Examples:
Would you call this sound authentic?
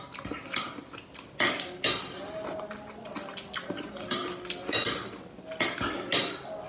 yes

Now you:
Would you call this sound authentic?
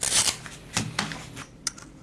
yes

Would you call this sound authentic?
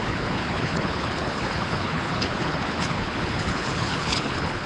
no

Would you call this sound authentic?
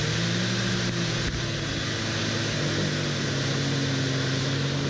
yes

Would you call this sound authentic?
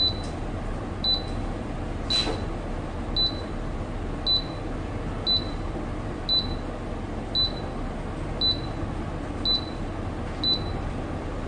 yes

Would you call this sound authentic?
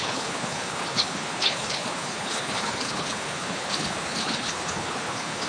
no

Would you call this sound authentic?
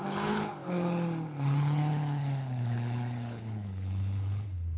no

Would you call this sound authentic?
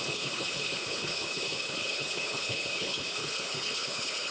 no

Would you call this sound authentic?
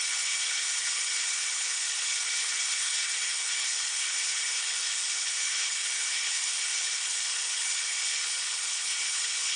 no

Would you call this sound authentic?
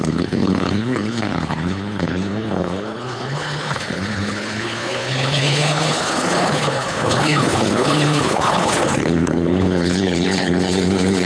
no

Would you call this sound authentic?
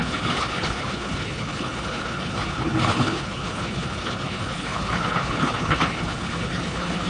no